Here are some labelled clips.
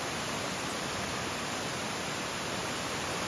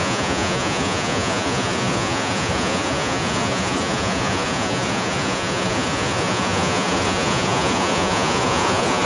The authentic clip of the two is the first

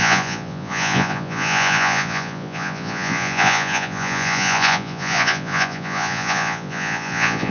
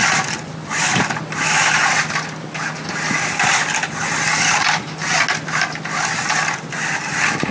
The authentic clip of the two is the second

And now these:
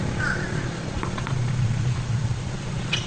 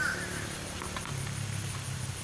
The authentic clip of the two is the second